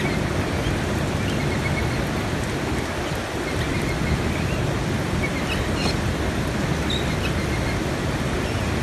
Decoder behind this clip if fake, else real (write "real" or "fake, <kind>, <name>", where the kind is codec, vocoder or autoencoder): real